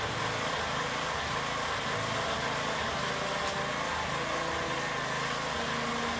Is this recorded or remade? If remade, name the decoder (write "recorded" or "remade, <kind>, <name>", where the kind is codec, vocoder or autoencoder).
recorded